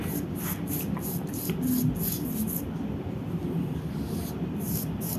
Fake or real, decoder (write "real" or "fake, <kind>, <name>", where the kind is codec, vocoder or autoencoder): real